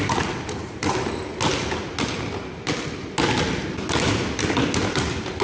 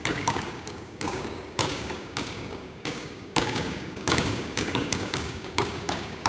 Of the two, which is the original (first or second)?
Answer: first